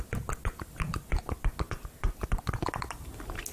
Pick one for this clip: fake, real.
real